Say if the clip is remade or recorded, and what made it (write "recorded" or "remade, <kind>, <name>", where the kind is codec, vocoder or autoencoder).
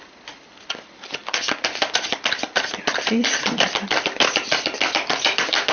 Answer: remade, vocoder, BigVGAN v2